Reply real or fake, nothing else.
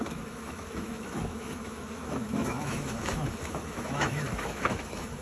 fake